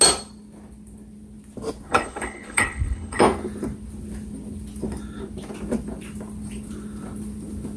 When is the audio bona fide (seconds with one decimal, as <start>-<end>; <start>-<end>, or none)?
0.0-1.9; 3.2-7.8